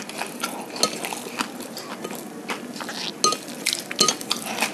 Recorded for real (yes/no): yes